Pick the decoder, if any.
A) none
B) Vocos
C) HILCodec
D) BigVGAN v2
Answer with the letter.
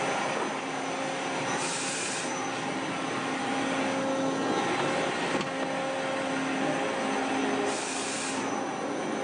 A